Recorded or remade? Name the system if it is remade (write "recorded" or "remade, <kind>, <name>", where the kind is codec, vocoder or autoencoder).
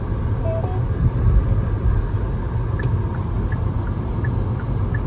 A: recorded